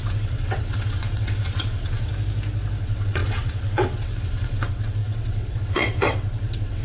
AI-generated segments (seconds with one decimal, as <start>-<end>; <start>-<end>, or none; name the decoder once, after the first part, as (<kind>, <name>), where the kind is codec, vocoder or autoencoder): 0.0-2.1 (vocoder, WaveNeXt); 2.8-6.8